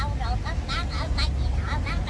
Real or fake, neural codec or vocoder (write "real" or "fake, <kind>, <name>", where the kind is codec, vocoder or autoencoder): real